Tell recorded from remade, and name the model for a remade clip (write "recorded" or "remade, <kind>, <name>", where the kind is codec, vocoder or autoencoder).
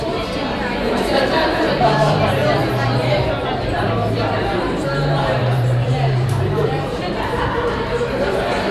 remade, vocoder, BigVGAN v2